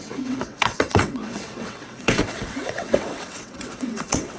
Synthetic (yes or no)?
yes